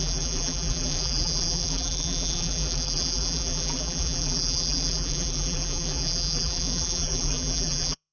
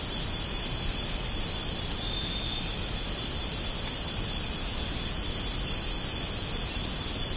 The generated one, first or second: first